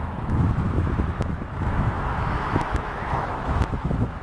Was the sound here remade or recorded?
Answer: remade